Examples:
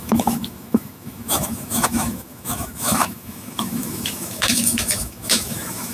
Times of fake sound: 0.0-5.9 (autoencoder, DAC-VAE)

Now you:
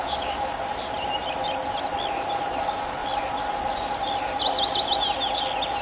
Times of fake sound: 0.0-0.5 (autoencoder, DAC-VAE)

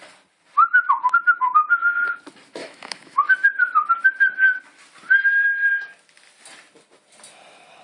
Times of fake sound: 2.6-3.2 (autoencoder, DAC-VAE)

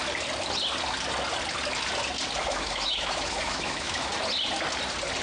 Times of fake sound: 2.4-4.1 (autoencoder, DAC-VAE)

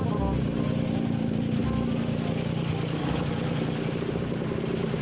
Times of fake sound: none

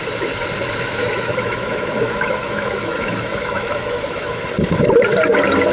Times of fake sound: 1.0-4.4 (autoencoder, DAC-VAE)

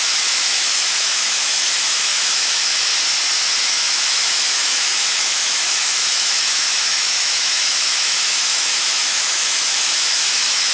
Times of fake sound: 0.0-2.9 (autoencoder, DAC-VAE); 3.6-10.7

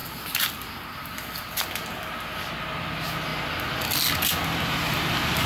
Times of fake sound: none